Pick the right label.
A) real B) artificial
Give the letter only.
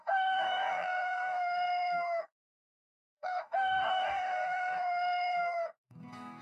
B